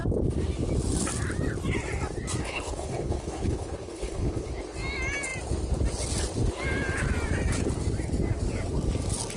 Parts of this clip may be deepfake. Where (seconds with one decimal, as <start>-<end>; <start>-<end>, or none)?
2.4-4.5